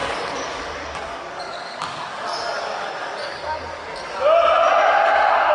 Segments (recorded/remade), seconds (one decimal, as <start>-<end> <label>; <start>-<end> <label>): 0.0-3.8 remade; 3.8-5.5 recorded